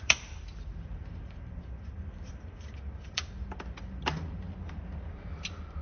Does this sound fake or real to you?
fake